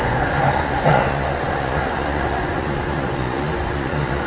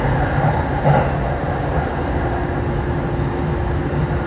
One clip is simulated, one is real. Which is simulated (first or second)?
first